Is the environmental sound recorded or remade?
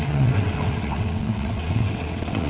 remade